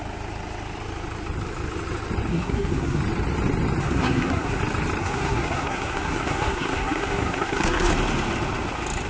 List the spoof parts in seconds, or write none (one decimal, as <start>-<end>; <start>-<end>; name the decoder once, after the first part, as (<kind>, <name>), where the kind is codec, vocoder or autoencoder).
2.3-3.0 (codec, SNAC); 3.8-4.6; 5.0-7.9